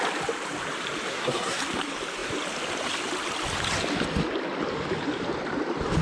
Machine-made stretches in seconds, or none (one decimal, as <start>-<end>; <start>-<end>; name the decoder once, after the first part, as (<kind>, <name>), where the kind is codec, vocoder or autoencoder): 1.1-1.6 (codec, SNAC)